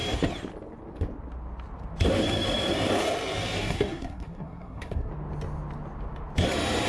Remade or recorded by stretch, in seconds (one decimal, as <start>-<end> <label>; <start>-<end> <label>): 0.0-3.6 recorded; 3.6-5.1 remade; 5.1-6.9 recorded